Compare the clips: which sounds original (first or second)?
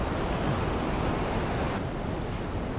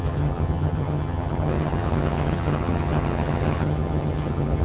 first